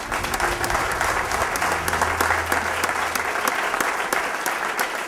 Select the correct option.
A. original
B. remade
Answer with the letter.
A